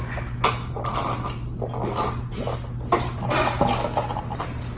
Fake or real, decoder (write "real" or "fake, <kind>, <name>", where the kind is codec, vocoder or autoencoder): real